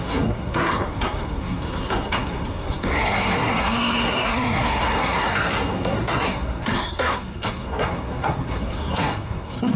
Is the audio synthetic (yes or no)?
yes